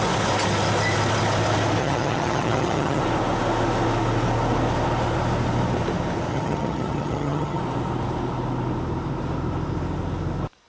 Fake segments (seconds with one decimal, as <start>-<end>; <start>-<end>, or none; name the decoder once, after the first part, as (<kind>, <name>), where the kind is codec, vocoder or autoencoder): 1.8-3.0 (vocoder, HiFi-GAN); 6.3-7.6